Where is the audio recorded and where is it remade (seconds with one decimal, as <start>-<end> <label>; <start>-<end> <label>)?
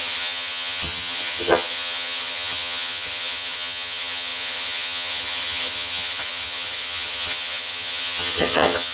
0.0-8.9 remade